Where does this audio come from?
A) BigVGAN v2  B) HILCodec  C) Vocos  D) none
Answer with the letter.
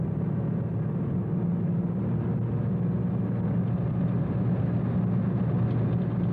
D